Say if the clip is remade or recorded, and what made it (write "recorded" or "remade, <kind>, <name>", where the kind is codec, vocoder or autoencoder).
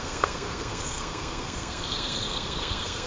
remade, codec, SNAC